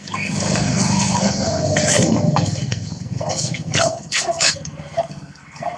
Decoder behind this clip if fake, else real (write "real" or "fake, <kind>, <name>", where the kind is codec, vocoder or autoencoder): fake, codec, SNAC